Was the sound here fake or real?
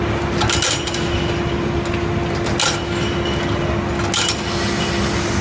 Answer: real